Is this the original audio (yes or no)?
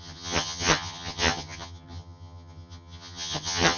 no